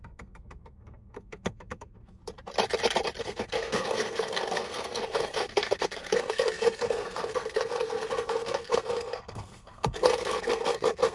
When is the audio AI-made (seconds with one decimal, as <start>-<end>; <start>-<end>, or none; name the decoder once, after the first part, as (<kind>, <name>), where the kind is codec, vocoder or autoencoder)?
0.0-2.2 (codec, SNAC); 3.2-11.1